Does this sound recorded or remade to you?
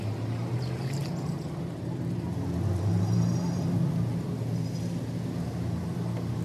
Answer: recorded